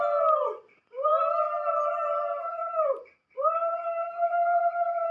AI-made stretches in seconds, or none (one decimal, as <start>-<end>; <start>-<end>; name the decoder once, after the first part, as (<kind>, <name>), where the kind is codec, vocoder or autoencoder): none